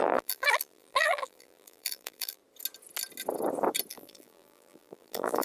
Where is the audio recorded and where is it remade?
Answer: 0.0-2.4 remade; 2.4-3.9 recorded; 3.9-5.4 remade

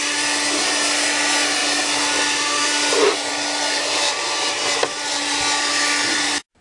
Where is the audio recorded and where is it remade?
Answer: 0.0-6.6 recorded

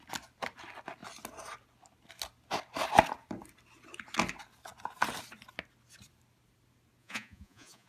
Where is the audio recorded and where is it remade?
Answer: 0.0-7.0 recorded; 7.0-7.9 remade